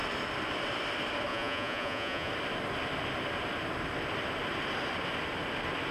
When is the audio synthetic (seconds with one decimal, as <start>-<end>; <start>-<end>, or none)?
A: 1.3-2.3